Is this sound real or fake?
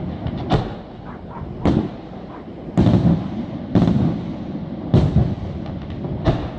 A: real